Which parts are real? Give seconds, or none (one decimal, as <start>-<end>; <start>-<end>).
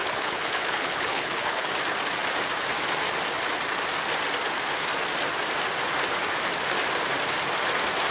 1.7-8.1